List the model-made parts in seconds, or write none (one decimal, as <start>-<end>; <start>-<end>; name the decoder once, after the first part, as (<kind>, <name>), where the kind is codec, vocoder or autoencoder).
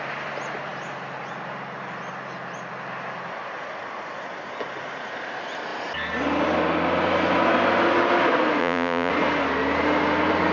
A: 8.6-9.1 (vocoder, Vocos)